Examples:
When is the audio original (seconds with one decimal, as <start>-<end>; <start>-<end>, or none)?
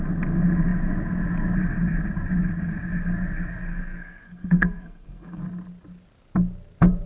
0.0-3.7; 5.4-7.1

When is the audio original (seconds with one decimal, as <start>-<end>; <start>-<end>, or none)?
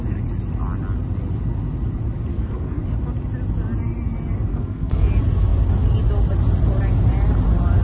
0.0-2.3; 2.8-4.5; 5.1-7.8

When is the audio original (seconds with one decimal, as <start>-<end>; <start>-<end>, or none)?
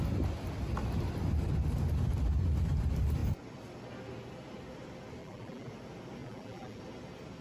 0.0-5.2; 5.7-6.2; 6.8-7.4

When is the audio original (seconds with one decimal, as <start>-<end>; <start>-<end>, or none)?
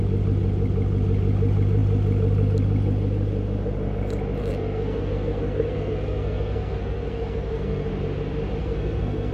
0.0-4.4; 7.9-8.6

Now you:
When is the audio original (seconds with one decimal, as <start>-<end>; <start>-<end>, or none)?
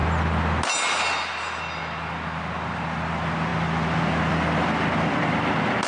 0.0-5.9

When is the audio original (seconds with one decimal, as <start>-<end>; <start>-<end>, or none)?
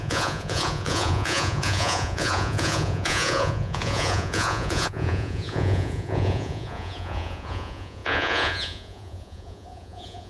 none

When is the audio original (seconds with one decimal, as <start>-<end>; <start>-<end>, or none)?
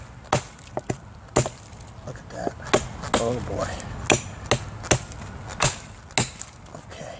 0.0-7.2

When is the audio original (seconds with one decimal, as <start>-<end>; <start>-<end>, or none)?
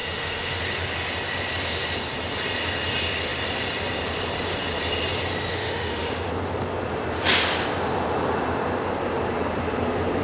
0.6-5.5; 6.3-10.2